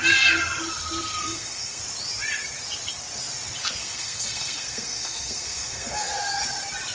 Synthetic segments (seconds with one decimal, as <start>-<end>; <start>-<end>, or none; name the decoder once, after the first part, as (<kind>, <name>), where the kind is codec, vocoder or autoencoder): 1.2-1.8 (codec, SNAC); 3.8-6.1